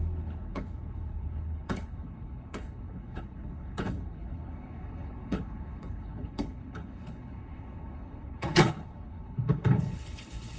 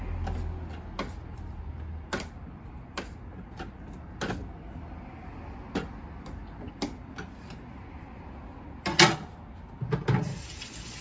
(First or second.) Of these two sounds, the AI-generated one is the first